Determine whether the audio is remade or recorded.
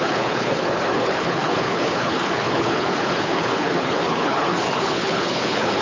remade